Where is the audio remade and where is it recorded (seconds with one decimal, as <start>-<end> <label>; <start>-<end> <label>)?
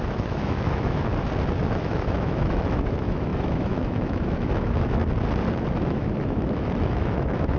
0.0-1.1 remade; 1.1-1.6 recorded; 1.6-5.0 remade; 5.0-5.7 recorded; 5.7-7.6 remade